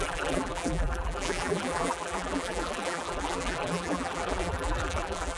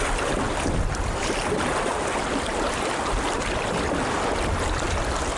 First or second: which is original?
second